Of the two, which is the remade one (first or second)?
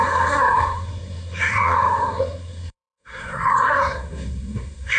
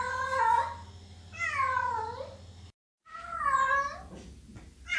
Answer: first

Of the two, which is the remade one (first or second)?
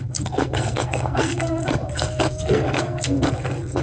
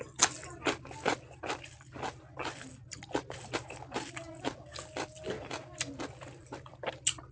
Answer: first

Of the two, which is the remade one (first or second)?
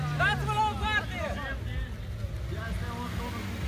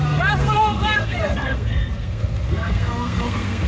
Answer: second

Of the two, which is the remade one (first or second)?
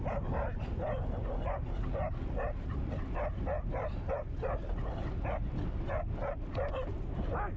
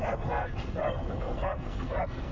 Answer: second